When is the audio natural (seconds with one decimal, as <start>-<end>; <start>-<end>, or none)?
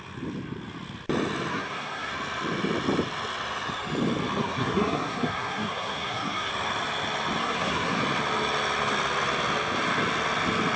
0.0-1.5; 2.1-4.4; 6.5-7.4; 8.0-10.8